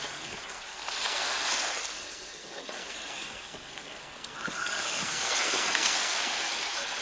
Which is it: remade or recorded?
remade